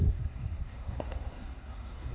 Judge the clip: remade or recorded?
remade